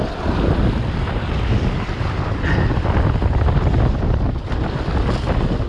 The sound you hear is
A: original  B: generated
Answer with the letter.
A